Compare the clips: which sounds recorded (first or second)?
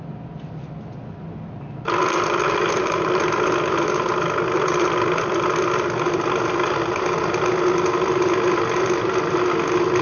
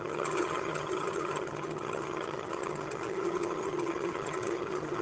first